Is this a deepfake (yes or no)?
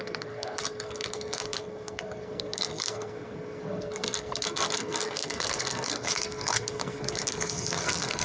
yes